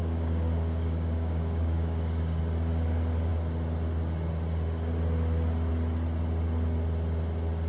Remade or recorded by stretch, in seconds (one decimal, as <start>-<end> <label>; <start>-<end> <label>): 0.0-2.4 remade; 2.4-7.7 recorded